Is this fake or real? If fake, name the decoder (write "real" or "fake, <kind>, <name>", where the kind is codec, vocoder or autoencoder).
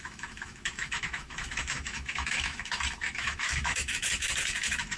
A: fake, autoencoder, DAC-VAE